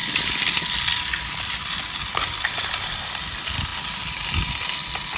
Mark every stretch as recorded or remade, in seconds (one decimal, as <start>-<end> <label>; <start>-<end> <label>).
0.0-5.2 recorded